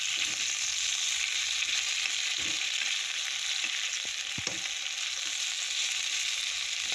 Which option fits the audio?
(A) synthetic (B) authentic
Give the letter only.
B